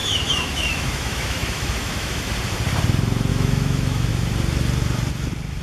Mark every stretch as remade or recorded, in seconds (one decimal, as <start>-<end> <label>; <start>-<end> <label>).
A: 0.0-2.3 remade; 2.3-3.3 recorded; 3.3-4.1 remade; 4.1-5.6 recorded